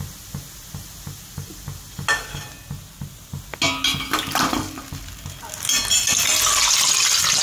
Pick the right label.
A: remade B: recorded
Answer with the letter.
B